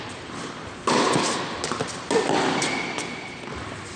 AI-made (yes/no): no